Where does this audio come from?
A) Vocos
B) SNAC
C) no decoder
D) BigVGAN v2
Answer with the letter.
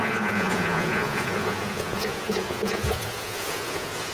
A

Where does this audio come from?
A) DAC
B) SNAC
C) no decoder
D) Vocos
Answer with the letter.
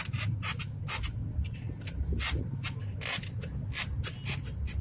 C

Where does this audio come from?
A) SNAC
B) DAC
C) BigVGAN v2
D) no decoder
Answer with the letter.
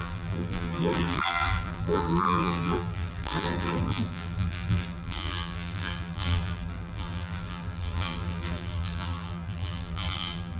C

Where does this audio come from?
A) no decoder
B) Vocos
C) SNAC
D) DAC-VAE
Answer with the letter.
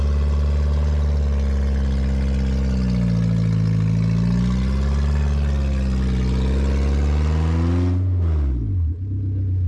A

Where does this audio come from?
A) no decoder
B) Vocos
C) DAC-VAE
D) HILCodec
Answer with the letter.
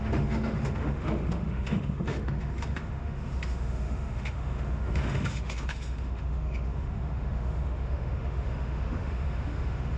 C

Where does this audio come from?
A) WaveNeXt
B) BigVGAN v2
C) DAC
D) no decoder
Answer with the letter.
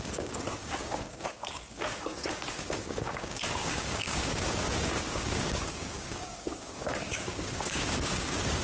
C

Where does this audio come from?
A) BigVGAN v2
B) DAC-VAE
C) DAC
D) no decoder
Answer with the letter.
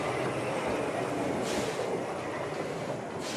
D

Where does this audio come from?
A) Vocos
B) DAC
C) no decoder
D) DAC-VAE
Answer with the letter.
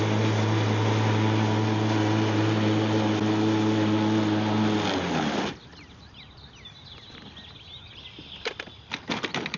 C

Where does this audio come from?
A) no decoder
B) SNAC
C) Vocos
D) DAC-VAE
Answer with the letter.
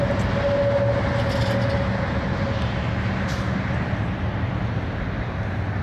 A